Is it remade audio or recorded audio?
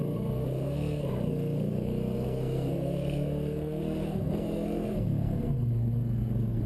remade